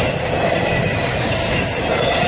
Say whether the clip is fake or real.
real